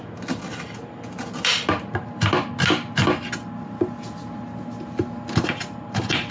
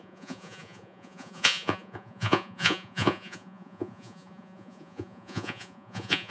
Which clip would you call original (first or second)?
first